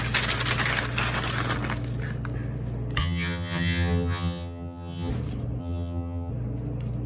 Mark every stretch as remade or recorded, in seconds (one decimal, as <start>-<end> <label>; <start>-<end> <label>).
0.0-3.0 recorded; 3.0-5.1 remade; 5.1-5.6 recorded; 5.6-6.3 remade; 6.3-7.1 recorded